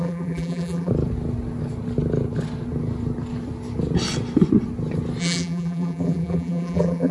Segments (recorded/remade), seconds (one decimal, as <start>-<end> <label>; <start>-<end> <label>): 0.0-0.9 remade; 0.9-5.2 recorded; 5.2-7.1 remade